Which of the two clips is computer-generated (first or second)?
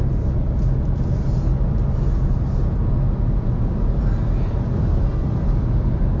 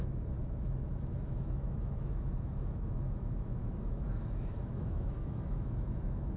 second